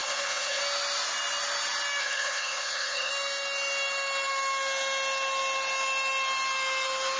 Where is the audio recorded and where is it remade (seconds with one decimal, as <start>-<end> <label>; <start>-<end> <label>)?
0.0-0.6 remade; 0.6-2.0 recorded; 2.0-3.1 remade; 3.1-7.2 recorded